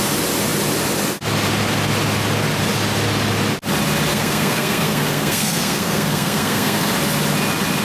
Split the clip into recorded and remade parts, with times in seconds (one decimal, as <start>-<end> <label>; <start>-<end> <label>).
0.0-4.1 recorded; 4.1-6.9 remade; 6.9-7.8 recorded